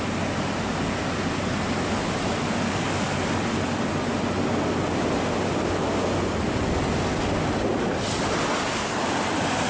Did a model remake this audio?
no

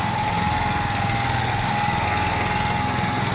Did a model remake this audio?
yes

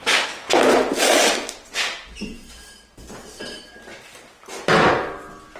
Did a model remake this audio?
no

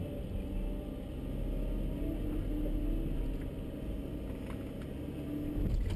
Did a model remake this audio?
no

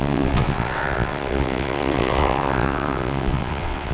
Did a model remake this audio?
yes